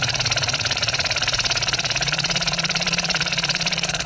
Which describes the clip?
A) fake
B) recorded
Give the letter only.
A